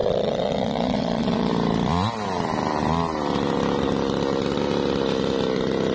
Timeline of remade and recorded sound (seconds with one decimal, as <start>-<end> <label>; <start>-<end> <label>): 0.0-1.5 remade; 1.5-5.9 recorded